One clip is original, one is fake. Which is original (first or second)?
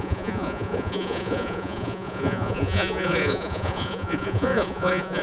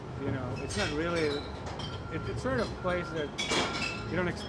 second